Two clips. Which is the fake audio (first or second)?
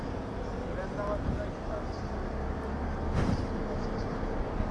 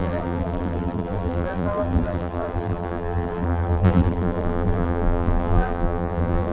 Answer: second